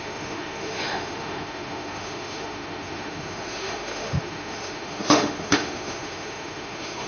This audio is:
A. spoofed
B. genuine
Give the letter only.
A